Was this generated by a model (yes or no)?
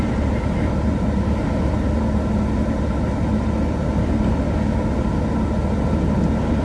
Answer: no